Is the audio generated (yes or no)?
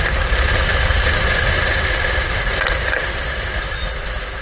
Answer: no